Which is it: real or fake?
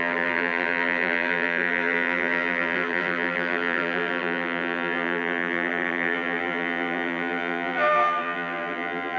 fake